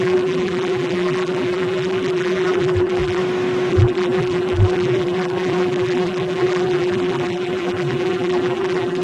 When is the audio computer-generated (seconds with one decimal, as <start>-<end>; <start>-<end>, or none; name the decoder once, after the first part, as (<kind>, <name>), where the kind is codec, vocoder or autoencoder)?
0.0-3.2 (vocoder, BigVGAN v2); 3.7-9.0